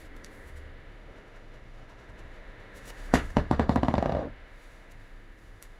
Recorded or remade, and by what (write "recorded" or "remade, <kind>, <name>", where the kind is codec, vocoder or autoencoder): remade, autoencoder, DAC-VAE